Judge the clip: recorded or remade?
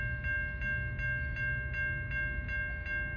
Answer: recorded